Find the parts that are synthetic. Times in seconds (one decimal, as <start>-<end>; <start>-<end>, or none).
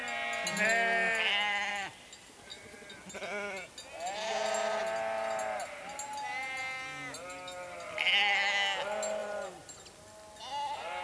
none